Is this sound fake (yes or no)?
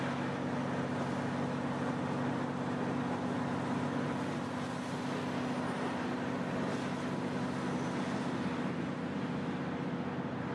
no